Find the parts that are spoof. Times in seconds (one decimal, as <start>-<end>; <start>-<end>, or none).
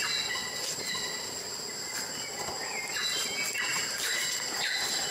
none